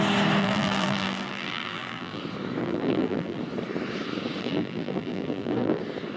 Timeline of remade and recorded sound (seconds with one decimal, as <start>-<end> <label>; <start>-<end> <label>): 0.0-0.4 recorded; 0.4-2.2 remade; 2.2-2.6 recorded; 2.6-3.4 remade; 3.4-4.4 recorded; 4.4-5.8 remade; 5.8-6.2 recorded